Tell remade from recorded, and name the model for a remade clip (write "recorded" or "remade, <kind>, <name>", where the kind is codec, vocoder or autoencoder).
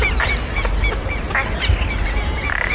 recorded